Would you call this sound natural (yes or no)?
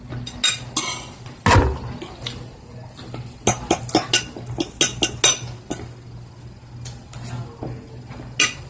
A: yes